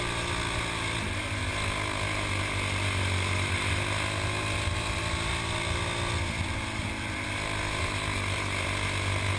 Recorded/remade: recorded